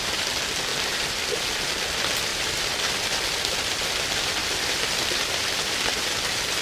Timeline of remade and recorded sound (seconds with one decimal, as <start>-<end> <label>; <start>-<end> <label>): 0.0-0.7 recorded; 0.7-1.3 remade; 1.3-2.3 recorded; 2.3-3.3 remade; 3.3-4.4 recorded; 4.4-6.6 remade